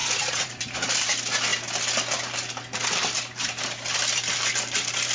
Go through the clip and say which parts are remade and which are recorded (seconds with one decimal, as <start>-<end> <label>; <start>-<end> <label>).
0.0-0.6 remade; 0.6-5.1 recorded